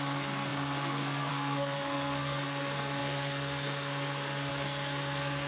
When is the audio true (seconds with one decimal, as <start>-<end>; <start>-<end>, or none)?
none